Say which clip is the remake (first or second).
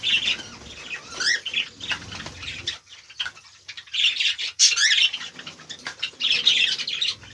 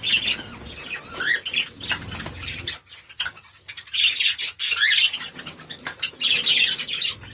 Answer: first